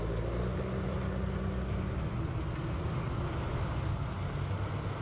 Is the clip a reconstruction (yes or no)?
no